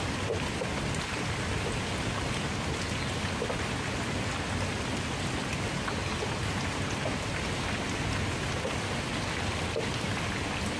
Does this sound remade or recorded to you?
recorded